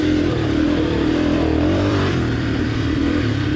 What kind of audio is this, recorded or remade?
remade